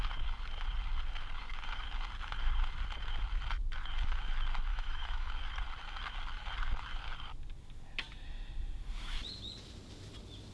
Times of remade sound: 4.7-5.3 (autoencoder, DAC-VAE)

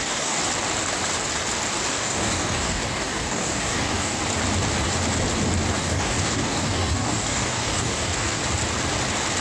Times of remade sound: 0.0-0.4 (codec, DAC); 1.9-4.2; 5.7-8.4

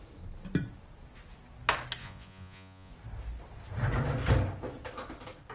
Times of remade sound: 2.0-2.9 (vocoder, Vocos)

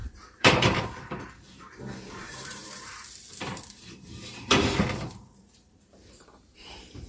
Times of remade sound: 0.0-7.1 (vocoder, BigVGAN v2)